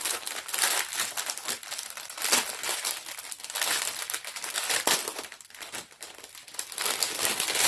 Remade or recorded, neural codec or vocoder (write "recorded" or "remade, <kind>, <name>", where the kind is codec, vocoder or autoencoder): recorded